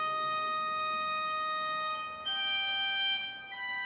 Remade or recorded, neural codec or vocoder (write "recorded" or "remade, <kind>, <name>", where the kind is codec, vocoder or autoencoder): remade, codec, DAC